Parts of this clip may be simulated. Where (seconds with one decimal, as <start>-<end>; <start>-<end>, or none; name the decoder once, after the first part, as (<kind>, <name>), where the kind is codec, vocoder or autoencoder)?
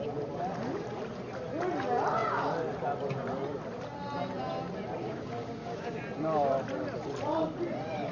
5.0-6.0 (codec, DAC)